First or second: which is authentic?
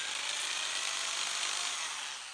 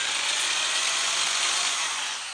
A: first